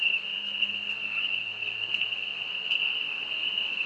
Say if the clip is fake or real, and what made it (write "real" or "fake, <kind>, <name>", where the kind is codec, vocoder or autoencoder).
fake, codec, SNAC